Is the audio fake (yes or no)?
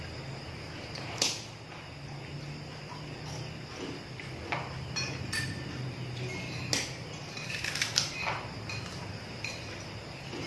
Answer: no